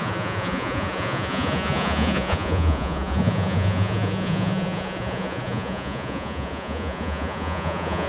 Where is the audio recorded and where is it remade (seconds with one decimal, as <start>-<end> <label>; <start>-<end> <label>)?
0.0-8.1 remade